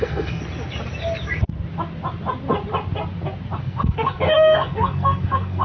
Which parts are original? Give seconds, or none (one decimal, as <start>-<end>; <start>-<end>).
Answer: 0.4-3.6